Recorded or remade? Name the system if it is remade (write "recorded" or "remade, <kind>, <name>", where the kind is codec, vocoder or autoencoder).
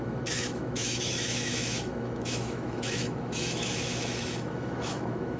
remade, autoencoder, DAC-VAE